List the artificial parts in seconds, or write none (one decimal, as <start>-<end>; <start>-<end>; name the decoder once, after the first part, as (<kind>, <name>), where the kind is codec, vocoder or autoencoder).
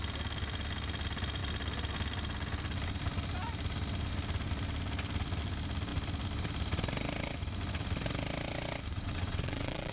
8.9-9.9 (vocoder, WaveNeXt)